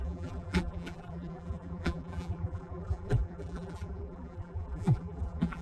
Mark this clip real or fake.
fake